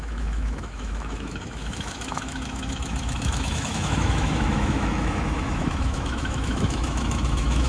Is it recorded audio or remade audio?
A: remade